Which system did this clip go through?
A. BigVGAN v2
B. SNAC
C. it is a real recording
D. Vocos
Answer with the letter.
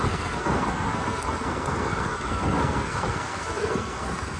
B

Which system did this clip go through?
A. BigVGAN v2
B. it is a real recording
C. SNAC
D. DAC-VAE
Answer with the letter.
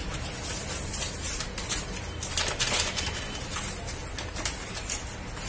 B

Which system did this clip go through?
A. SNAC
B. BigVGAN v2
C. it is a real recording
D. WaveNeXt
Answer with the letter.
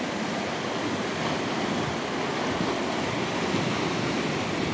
C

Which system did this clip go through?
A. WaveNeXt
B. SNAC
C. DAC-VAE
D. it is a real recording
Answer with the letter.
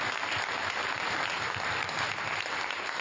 D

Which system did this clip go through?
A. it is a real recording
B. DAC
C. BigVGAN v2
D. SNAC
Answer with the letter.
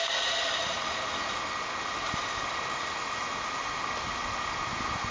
A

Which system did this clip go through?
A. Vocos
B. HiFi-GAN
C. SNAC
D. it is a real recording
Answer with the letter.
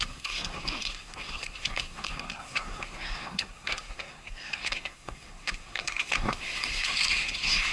C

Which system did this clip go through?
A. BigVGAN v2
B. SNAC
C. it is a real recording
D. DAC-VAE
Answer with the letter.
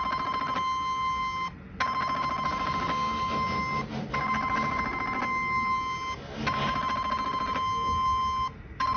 C